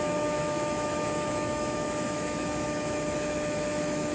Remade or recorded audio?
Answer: remade